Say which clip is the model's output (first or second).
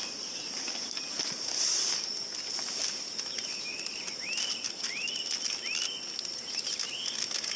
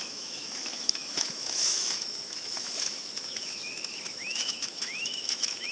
second